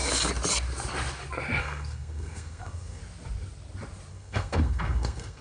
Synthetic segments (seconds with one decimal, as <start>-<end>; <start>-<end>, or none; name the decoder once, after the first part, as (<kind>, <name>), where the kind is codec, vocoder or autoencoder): 1.6-3.0 (codec, SNAC); 4.1-5.4